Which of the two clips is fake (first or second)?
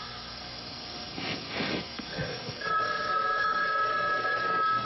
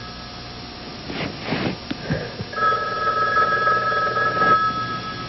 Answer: first